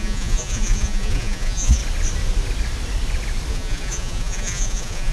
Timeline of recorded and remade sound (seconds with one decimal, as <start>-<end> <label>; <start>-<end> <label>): 0.0-1.8 remade; 1.8-3.5 recorded; 3.5-5.1 remade